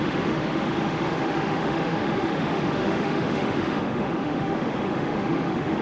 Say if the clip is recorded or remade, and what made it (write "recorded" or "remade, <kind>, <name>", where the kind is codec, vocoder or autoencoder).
remade, autoencoder, DAC-VAE